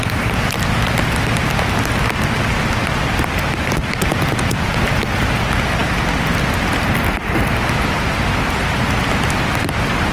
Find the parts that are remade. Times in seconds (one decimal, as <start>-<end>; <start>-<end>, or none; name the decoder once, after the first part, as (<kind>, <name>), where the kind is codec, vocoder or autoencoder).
4.1-4.8 (vocoder, Vocos)